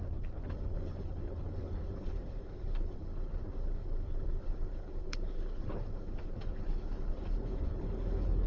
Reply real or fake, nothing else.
fake